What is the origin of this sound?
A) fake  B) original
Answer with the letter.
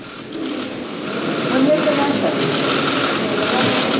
B